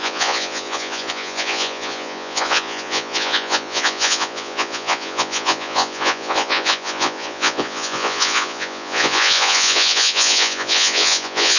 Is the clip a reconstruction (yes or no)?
yes